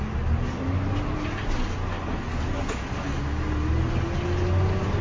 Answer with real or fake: real